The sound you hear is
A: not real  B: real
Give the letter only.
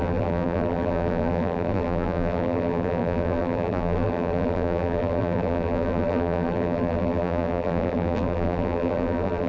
A